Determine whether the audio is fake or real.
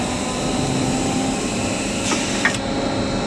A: real